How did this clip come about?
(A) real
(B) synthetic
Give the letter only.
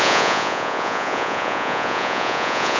B